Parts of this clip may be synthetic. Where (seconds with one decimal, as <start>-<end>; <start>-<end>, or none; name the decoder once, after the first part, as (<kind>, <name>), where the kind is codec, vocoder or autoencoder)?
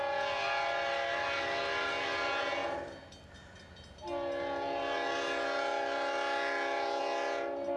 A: none